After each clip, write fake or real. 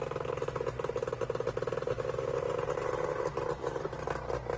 real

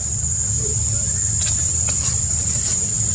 real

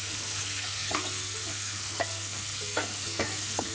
fake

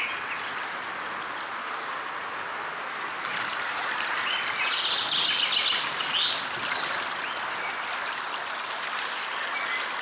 real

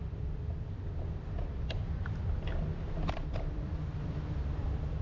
fake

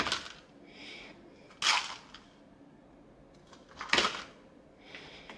real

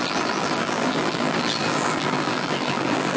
fake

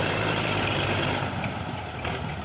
fake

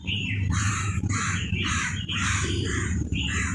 fake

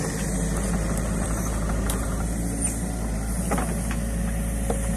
real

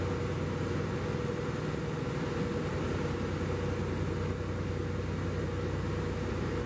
real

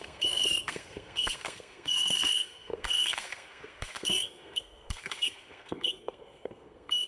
fake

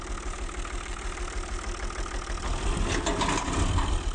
real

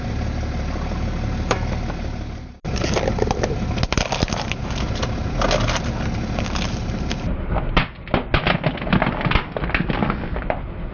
real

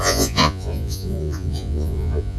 fake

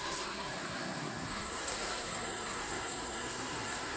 fake